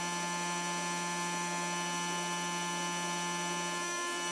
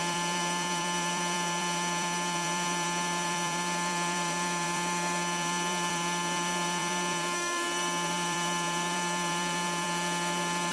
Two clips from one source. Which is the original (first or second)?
first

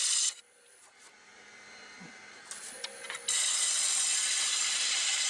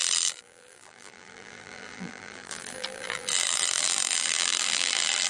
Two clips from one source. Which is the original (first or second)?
first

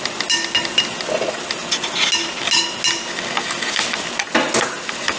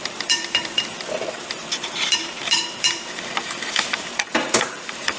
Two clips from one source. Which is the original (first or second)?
first